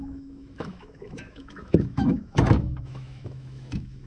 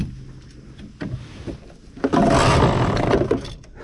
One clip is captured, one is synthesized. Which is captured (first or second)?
second